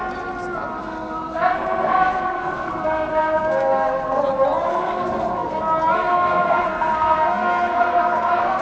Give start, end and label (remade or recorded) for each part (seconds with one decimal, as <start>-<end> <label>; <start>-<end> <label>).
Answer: 0.0-0.8 recorded; 0.8-4.2 remade; 4.2-4.7 recorded; 4.7-5.6 remade; 5.6-6.1 recorded; 6.1-8.6 remade